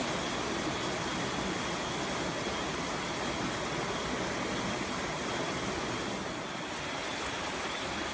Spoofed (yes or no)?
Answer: no